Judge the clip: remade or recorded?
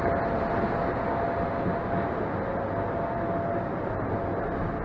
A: recorded